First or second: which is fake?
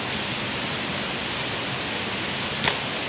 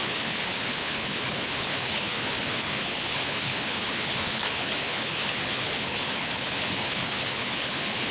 second